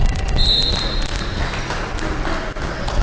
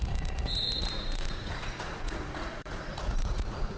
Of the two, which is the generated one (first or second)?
second